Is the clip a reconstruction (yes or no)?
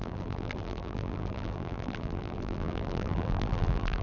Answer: yes